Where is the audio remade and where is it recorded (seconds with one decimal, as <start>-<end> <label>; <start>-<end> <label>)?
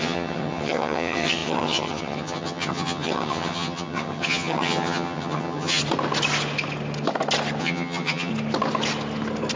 0.0-5.8 remade; 5.8-7.6 recorded; 7.6-8.3 remade; 8.3-9.6 recorded